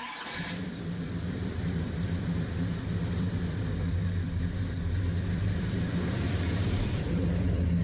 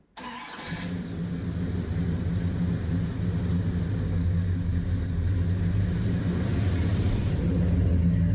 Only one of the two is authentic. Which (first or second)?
second